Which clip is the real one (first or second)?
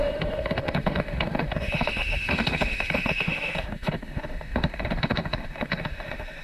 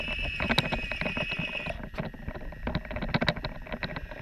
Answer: second